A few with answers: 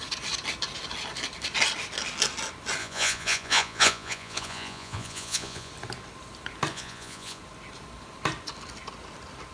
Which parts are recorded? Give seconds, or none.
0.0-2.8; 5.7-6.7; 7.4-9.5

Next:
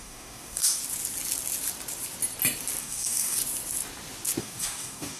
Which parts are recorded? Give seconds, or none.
0.8-2.8; 3.4-4.4

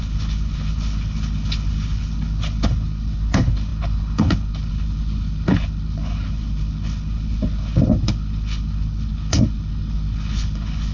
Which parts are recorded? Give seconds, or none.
none

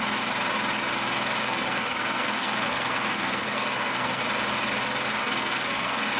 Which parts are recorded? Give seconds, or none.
0.0-1.4; 4.2-5.2

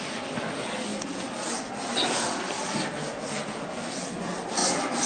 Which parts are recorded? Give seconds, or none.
0.0-5.1

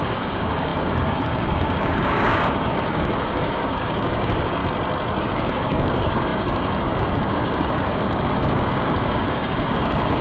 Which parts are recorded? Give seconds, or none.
4.6-5.2

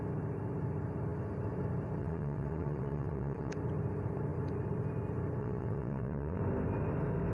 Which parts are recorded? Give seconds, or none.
0.0-2.0; 3.5-5.4; 6.4-7.3